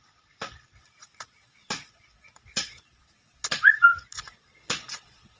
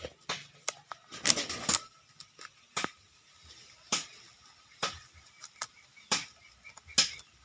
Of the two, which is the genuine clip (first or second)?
second